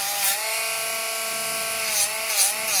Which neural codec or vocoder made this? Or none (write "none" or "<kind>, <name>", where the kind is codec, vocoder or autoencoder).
none